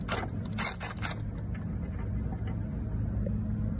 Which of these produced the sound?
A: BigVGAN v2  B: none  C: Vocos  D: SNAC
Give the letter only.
B